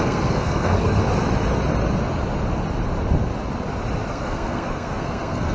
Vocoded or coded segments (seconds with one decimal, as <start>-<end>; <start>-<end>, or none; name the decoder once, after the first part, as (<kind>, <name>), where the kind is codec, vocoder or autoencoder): 0.0-1.0 (codec, SNAC); 4.1-5.5